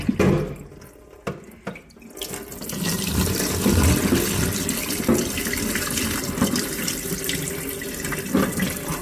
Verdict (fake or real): real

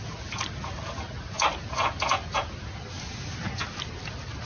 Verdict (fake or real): real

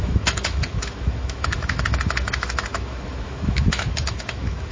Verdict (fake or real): fake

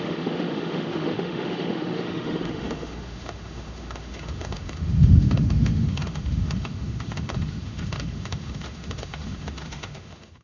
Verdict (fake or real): fake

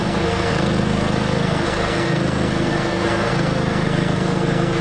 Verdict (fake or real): fake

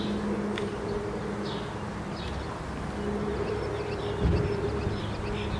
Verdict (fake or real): real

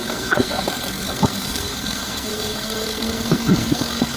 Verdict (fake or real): fake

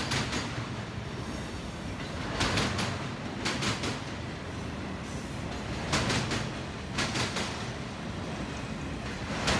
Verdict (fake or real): real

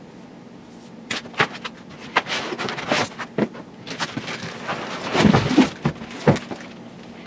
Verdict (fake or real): real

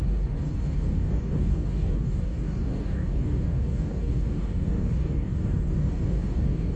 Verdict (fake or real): fake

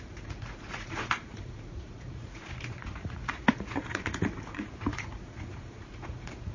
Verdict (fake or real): fake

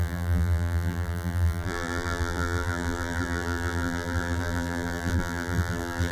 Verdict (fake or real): fake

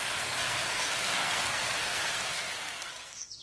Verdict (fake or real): fake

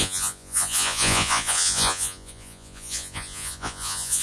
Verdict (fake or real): fake